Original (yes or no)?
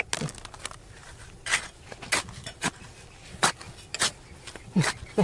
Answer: yes